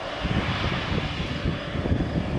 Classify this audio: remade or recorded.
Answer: recorded